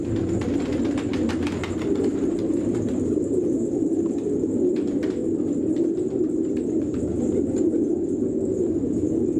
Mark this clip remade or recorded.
recorded